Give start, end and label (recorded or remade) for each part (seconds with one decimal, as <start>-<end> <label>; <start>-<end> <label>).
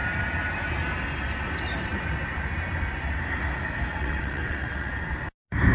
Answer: 0.0-3.9 recorded; 3.9-4.9 remade; 4.9-5.7 recorded